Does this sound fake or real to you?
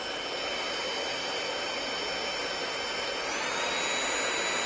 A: real